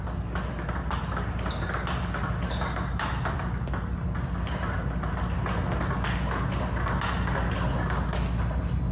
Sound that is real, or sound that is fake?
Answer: real